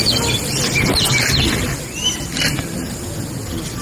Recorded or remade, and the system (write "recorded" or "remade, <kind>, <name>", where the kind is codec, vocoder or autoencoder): recorded